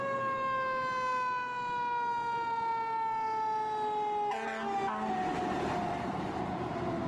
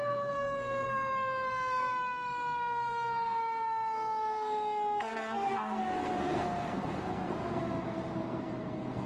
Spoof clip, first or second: second